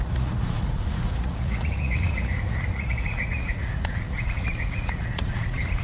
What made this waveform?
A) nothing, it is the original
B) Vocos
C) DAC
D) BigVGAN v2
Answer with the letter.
B